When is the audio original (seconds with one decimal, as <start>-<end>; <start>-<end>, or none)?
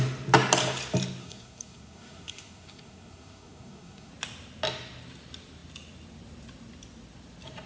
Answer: 0.0-1.2; 4.1-7.7